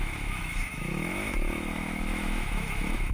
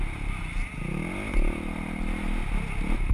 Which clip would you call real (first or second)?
second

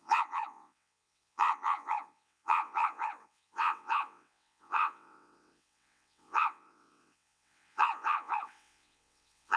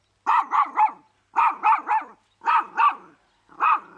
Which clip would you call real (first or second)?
second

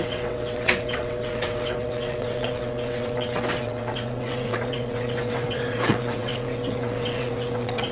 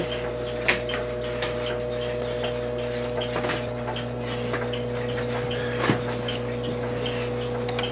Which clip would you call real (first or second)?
second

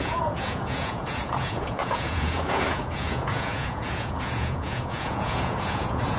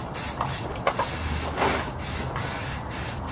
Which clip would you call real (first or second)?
second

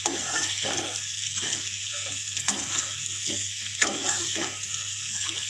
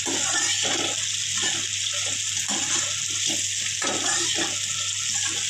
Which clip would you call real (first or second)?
second